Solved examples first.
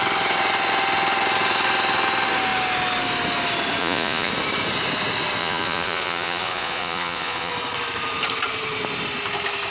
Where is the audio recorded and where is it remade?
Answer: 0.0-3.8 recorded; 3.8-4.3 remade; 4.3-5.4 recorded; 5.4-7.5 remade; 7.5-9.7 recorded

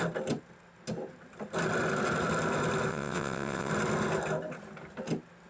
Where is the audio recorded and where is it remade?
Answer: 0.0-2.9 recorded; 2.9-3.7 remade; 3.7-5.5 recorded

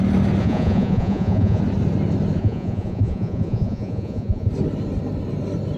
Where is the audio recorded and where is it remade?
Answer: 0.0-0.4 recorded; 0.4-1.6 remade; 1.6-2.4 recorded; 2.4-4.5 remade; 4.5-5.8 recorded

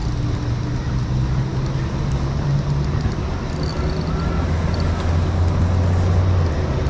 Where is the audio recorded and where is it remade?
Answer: 0.0-6.9 recorded

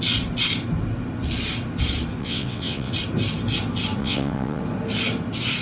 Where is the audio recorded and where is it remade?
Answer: 0.0-2.2 recorded; 2.2-2.9 remade; 2.9-4.0 recorded; 4.0-4.6 remade; 4.6-5.6 recorded

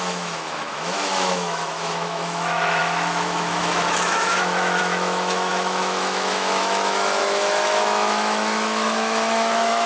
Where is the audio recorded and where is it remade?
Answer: 0.0-9.9 remade

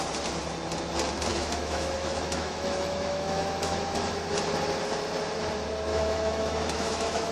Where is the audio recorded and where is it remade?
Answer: 0.0-1.3 recorded; 1.3-4.1 remade; 4.1-5.9 recorded; 5.9-7.3 remade

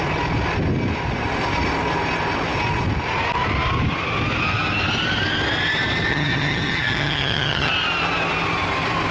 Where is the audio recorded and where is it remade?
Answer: 0.0-6.1 recorded; 6.1-7.7 remade; 7.7-9.1 recorded